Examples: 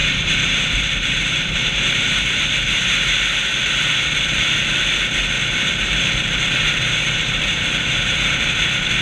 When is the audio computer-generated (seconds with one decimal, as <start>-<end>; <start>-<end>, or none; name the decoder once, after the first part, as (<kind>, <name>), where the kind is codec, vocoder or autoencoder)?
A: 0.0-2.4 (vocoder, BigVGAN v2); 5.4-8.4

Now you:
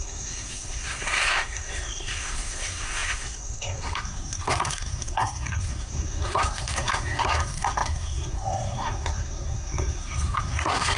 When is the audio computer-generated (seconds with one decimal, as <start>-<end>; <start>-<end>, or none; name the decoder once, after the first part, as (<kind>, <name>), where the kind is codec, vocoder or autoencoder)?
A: 0.0-11.0 (codec, SNAC)

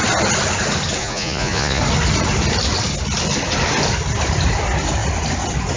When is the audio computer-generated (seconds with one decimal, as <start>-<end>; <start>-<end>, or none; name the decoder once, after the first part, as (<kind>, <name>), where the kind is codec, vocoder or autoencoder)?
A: 1.0-1.8 (vocoder, Vocos)